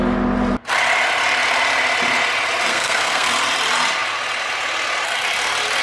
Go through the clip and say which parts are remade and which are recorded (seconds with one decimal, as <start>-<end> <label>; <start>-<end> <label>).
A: 0.0-2.7 recorded; 2.7-3.3 remade; 3.3-5.8 recorded